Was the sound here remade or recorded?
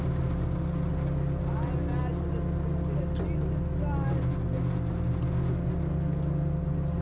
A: recorded